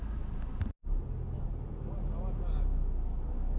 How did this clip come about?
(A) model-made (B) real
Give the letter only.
B